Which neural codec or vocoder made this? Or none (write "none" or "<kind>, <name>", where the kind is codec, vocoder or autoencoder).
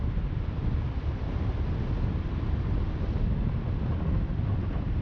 none